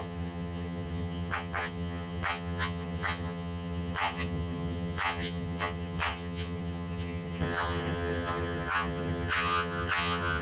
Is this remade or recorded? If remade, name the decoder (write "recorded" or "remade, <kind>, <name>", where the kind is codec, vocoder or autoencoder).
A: remade, vocoder, HiFi-GAN